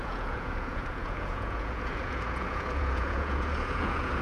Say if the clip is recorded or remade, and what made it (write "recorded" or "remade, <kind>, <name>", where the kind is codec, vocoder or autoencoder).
remade, vocoder, Vocos